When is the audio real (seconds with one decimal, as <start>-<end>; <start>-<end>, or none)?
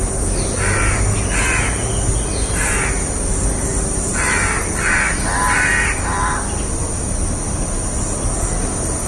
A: 0.0-9.1